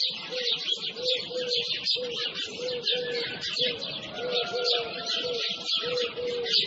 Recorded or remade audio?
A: remade